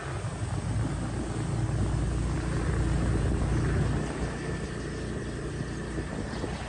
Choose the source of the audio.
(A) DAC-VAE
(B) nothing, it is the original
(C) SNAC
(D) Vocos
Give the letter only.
B